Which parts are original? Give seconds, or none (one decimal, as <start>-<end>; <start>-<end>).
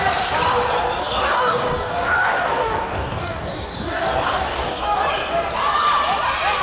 0.0-1.0; 5.0-6.6